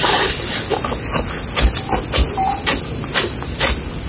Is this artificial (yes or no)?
no